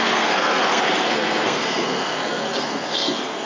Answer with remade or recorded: remade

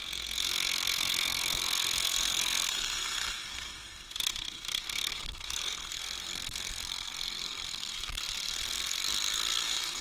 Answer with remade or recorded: remade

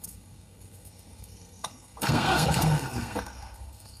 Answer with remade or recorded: remade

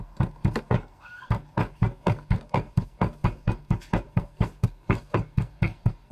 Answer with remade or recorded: remade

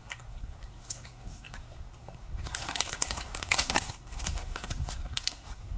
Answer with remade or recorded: remade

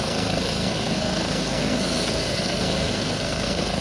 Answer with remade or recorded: remade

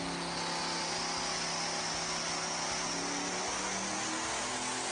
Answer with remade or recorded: recorded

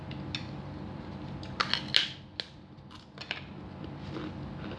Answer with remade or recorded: recorded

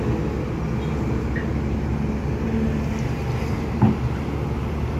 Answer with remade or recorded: recorded